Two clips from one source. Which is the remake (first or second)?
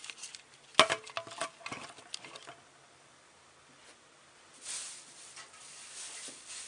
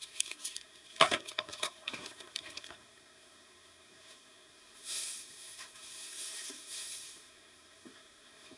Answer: second